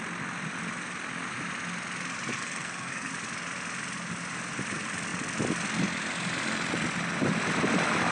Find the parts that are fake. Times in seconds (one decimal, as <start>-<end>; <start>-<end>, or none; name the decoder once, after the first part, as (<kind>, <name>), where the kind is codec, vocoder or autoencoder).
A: 2.3-3.1 (codec, SNAC)

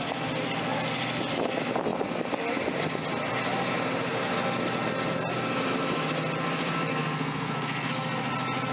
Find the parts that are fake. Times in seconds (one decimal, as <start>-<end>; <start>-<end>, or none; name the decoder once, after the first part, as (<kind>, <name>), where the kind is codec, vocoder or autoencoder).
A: 6.9-7.9 (codec, SNAC)

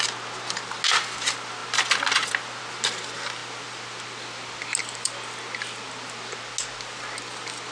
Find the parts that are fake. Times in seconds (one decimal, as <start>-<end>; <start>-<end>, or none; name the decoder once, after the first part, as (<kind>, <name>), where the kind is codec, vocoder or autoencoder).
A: none

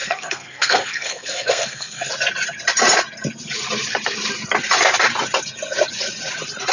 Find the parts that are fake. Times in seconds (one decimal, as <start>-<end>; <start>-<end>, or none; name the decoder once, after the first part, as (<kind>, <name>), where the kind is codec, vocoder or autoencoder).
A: 0.0-2.1 (codec, SNAC)